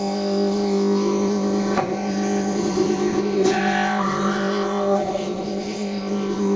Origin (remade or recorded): remade